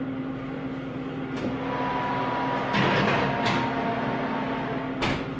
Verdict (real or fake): real